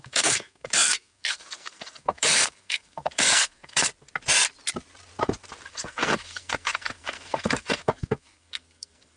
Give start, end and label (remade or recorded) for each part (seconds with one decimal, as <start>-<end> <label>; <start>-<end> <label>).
0.0-3.9 remade; 3.9-5.7 recorded; 5.7-9.2 remade